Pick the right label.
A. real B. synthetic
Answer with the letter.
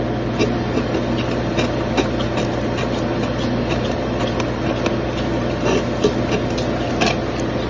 A